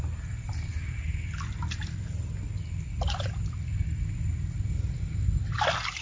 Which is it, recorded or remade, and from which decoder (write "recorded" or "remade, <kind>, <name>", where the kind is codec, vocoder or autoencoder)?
recorded